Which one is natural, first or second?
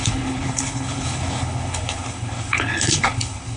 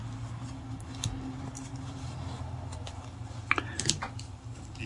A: second